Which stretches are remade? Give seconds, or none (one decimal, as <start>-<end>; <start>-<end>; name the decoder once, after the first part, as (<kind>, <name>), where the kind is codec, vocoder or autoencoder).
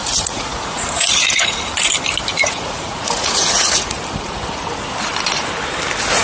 0.0-1.6 (vocoder, Vocos); 2.3-4.0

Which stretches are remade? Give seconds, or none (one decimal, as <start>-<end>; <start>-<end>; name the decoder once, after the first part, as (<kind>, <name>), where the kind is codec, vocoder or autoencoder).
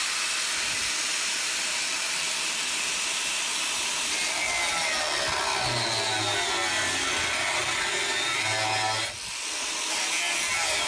7.6-8.4 (vocoder, BigVGAN v2)